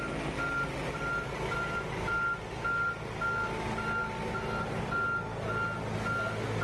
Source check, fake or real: real